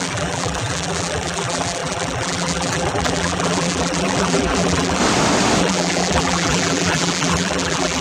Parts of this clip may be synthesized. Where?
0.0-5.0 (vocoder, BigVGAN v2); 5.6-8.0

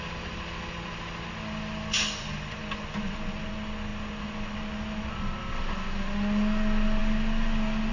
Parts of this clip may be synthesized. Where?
none

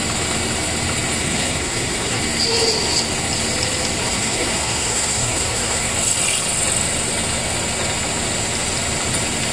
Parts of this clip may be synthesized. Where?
1.2-2.2 (codec, SNAC); 4.0-5.9